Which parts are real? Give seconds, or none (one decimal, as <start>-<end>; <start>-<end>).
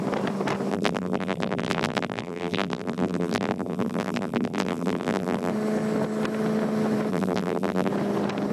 0.0-0.7; 5.5-7.1; 7.9-8.5